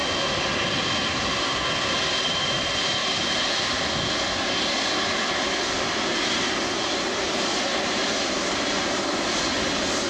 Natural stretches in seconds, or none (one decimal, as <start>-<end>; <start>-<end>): 0.0-3.0; 3.8-7.7; 9.0-10.1